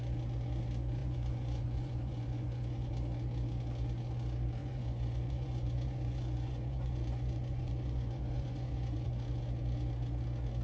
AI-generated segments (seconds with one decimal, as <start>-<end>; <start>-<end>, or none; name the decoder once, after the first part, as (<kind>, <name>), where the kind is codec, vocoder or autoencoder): 1.0-2.9 (vocoder, Vocos); 4.6-9.1